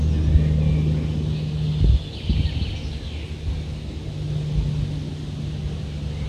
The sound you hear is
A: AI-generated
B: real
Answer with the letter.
B